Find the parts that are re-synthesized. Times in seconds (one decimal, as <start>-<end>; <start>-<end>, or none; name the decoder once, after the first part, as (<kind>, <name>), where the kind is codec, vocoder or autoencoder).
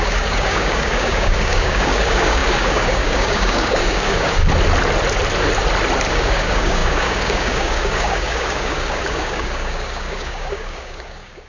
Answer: 0.0-4.4 (codec, DAC); 6.1-11.5